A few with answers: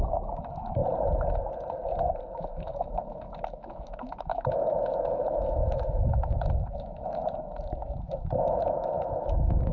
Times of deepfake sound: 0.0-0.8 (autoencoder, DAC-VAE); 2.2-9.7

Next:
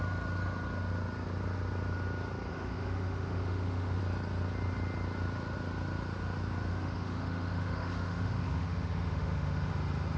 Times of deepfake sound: 2.5-4.0 (autoencoder, DAC-VAE); 6.7-9.7

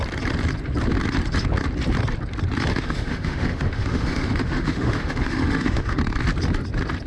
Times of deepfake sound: 2.7-6.0 (autoencoder, DAC-VAE)

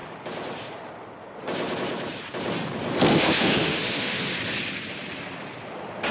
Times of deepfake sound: 3.1-4.2 (autoencoder, DAC-VAE)

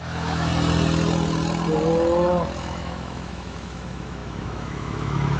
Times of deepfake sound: 0.0-0.5 (autoencoder, DAC-VAE); 2.6-5.4

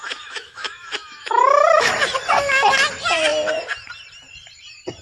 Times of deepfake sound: 0.0-1.9 (autoencoder, DAC-VAE)